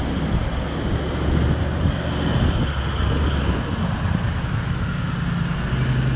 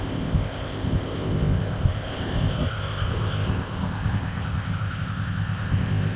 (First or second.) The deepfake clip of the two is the second